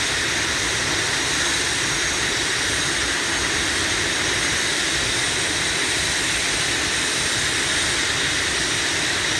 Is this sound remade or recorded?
recorded